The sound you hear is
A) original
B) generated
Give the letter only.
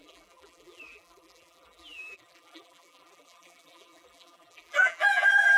B